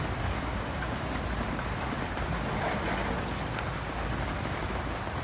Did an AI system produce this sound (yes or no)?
no